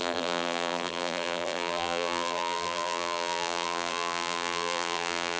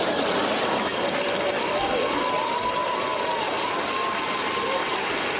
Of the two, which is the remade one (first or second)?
first